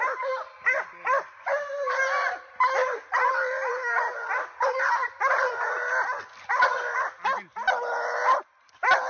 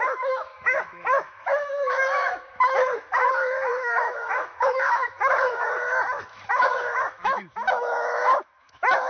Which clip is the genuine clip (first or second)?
first